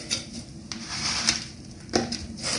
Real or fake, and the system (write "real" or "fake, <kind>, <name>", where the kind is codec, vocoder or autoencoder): fake, vocoder, BigVGAN v2